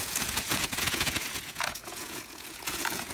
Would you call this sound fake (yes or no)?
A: yes